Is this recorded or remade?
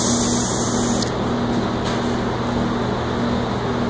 recorded